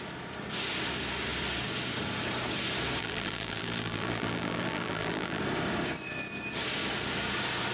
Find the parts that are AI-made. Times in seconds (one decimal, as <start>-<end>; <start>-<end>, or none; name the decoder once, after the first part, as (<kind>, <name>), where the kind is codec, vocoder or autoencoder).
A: 3.0-5.4 (vocoder, BigVGAN v2)

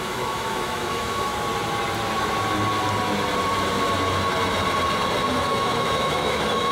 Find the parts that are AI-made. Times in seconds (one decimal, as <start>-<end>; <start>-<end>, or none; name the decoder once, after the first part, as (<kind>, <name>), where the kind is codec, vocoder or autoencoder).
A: 0.0-1.3 (autoencoder, DAC-VAE); 5.3-6.7

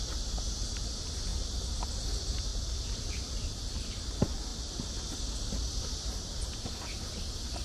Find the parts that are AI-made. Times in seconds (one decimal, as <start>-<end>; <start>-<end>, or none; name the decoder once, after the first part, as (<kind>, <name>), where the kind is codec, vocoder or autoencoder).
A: 0.0-2.5 (vocoder, BigVGAN v2); 3.0-4.5; 5.8-7.6

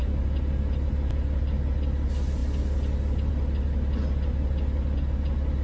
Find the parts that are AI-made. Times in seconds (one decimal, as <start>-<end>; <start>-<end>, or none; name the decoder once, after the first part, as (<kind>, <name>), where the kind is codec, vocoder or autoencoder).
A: none

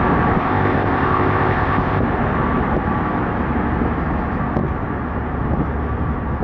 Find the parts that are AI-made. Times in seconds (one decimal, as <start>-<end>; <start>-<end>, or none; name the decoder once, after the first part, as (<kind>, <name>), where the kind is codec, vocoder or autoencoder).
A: 0.4-2.0 (codec, ZipCodec)